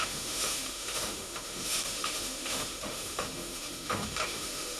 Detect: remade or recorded remade